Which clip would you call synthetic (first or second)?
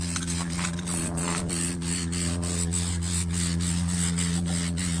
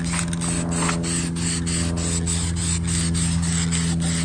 first